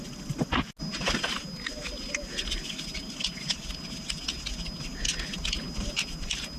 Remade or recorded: recorded